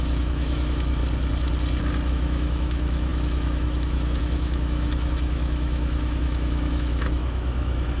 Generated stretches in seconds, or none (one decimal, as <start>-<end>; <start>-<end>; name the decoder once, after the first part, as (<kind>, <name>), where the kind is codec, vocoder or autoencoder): 0.0-1.0 (autoencoder, DAC-VAE); 2.1-8.0